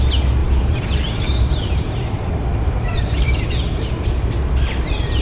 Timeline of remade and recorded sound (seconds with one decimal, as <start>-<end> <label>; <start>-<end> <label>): 0.0-0.4 recorded; 0.4-3.5 remade; 3.5-5.2 recorded